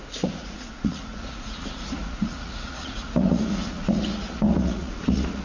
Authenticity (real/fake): fake